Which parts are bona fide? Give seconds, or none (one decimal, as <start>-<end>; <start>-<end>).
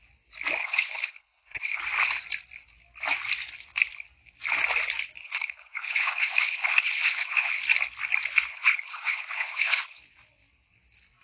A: 0.0-0.6; 1.8-5.2; 7.6-8.5; 10.0-11.2